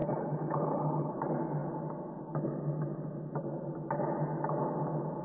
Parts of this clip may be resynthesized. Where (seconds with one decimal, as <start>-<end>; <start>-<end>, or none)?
0.0-1.1